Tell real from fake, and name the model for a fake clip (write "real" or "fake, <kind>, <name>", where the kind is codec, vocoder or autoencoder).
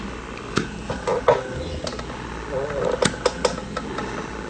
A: real